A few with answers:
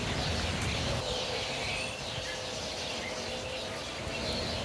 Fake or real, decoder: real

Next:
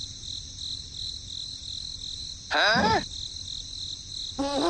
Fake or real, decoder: real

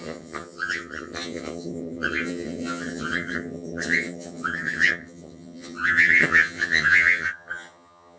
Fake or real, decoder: fake, vocoder, HiFi-GAN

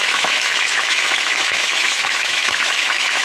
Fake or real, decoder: fake, autoencoder, DAC-VAE